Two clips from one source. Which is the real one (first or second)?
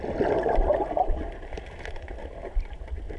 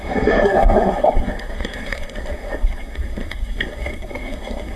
first